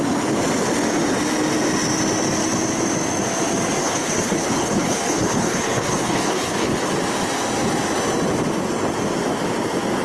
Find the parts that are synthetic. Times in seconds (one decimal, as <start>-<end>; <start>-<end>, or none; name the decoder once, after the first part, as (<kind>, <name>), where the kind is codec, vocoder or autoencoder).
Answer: 3.8-6.9 (codec, HILCodec)

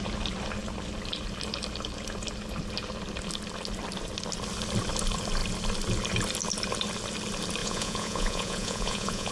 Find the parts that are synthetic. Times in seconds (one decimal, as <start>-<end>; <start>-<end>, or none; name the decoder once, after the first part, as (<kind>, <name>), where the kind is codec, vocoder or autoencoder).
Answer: 7.6-9.3 (vocoder, Vocos)

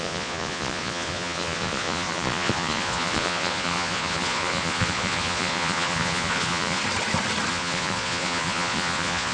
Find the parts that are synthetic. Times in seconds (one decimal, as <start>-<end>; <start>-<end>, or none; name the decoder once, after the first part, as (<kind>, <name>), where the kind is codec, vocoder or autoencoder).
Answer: 0.0-6.8 (vocoder, Vocos); 7.5-9.3

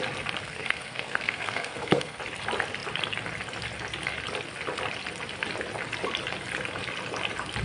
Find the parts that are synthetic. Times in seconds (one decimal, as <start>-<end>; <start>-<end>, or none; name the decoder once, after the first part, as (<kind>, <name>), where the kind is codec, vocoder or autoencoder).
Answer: 0.4-2.2 (codec, SNAC)

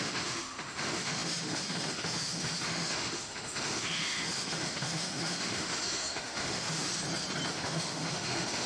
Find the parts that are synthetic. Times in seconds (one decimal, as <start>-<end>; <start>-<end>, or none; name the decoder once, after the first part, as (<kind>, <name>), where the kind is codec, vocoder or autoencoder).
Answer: 0.0-6.9 (autoencoder, DAC-VAE); 7.5-8.7

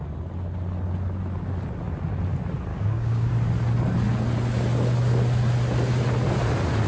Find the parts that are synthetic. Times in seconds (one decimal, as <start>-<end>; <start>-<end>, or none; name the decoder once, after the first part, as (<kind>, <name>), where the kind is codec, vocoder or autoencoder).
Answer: 2.7-3.3 (codec, DAC)

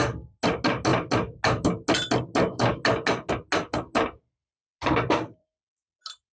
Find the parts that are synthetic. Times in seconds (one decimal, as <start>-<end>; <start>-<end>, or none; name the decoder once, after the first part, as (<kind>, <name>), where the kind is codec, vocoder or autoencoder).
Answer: none

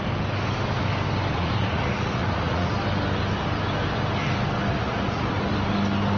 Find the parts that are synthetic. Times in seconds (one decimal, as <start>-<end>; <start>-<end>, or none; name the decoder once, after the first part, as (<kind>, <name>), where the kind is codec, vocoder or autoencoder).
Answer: 1.3-2.7 (vocoder, Vocos); 4.7-5.4